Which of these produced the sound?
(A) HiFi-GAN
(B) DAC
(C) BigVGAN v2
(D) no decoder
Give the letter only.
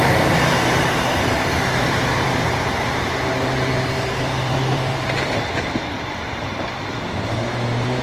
C